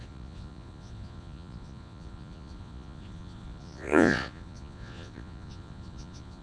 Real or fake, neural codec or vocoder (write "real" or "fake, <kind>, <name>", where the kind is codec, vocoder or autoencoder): fake, vocoder, Vocos